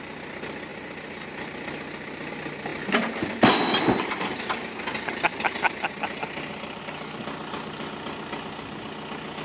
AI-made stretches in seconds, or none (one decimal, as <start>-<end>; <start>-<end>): 5.3-6.8